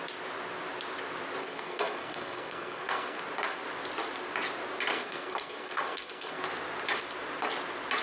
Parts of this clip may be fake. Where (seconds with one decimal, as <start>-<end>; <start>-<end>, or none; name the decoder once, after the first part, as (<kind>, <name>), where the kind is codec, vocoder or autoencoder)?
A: 1.4-3.2 (codec, SNAC); 4.9-6.4